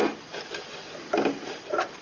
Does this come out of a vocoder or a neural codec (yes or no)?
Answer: no